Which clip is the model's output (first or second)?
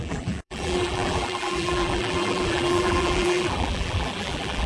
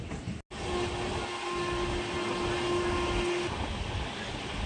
first